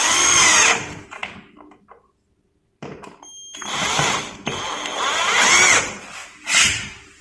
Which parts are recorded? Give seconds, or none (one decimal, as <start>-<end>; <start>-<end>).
0.0-6.2